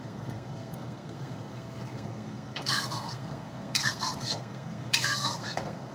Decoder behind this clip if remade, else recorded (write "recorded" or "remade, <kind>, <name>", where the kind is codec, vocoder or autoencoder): remade, codec, SNAC